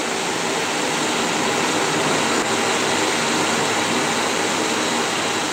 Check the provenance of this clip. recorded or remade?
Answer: recorded